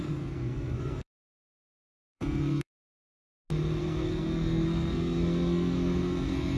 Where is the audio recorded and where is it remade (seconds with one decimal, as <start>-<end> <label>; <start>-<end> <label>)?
0.0-3.0 remade; 3.0-3.8 recorded; 3.8-6.6 remade